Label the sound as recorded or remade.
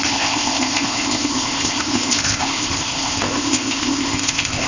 remade